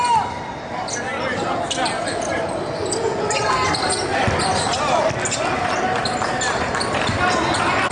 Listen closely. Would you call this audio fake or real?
real